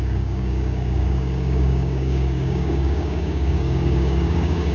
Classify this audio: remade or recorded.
remade